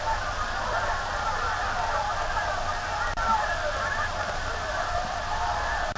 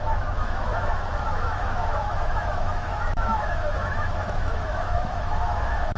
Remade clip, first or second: second